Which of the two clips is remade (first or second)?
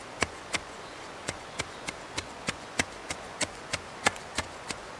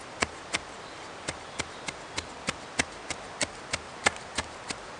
first